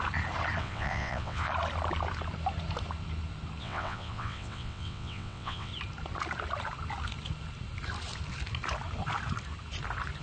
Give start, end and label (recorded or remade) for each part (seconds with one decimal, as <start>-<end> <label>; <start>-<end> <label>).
0.0-0.6 recorded; 0.6-1.5 remade; 1.5-3.6 recorded; 3.6-5.7 remade; 5.7-10.2 recorded